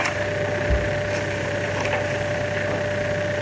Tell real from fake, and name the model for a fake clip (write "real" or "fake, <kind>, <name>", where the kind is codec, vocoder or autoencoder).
real